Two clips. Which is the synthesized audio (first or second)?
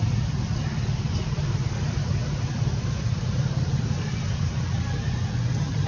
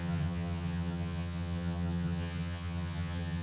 second